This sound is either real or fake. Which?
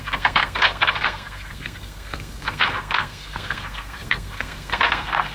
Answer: fake